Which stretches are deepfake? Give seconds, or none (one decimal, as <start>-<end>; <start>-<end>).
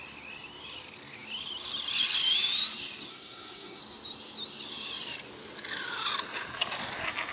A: 3.1-3.8